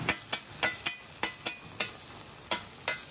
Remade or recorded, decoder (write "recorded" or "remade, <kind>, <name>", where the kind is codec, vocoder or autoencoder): recorded